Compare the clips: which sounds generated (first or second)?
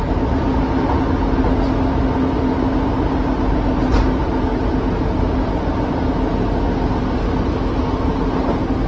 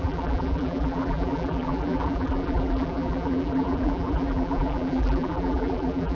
second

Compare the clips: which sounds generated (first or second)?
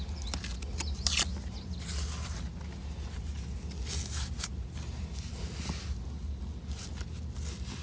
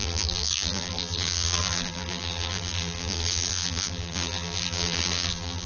second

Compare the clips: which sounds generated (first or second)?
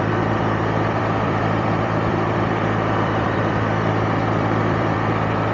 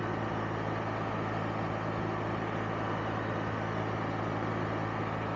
first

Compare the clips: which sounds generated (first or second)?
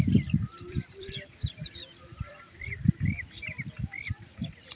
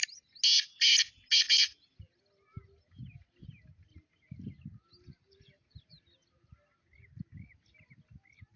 first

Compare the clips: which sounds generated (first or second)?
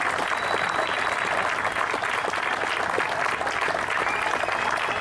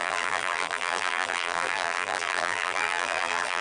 second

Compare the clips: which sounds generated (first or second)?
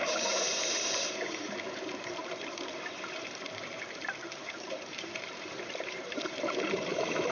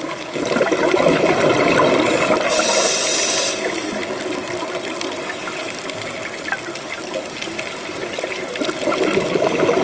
first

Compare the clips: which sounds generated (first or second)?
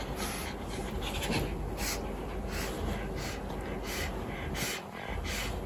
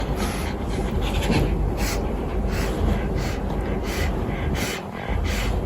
second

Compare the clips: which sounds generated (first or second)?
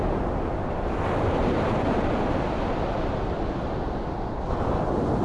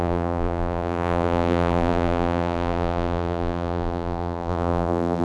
second